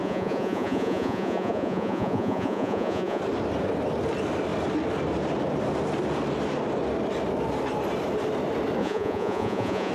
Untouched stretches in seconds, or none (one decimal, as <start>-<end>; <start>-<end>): 3.2-8.8